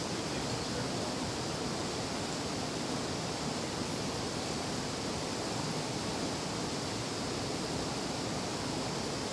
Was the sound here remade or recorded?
recorded